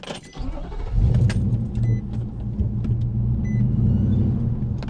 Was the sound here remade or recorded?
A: recorded